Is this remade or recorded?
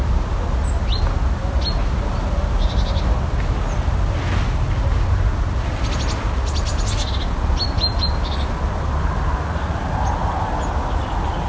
recorded